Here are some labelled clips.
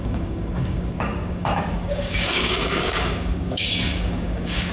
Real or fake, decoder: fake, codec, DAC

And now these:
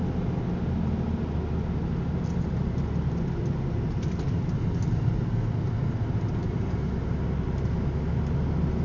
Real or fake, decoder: real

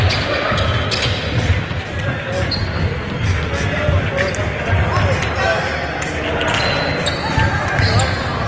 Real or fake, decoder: real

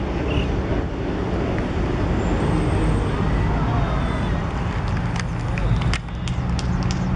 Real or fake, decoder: real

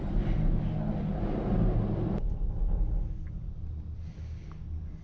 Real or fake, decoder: real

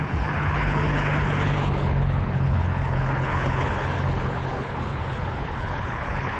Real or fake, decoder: fake, codec, HILCodec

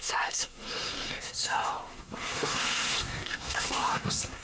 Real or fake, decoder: fake, codec, SNAC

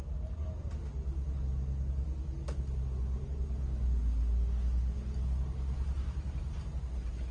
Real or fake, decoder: real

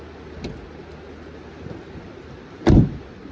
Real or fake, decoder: real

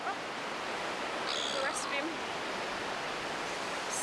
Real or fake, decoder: real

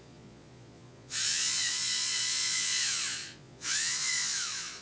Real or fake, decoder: fake, vocoder, Vocos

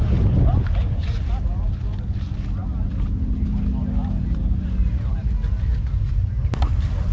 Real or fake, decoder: real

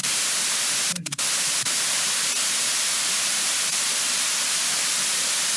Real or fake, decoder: fake, vocoder, BigVGAN v2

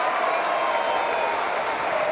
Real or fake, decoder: real